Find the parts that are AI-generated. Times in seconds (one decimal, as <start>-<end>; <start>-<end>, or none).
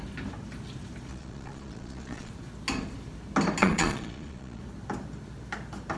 1.1-2.3; 3.6-4.6